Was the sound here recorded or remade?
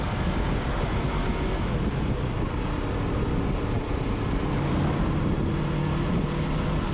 recorded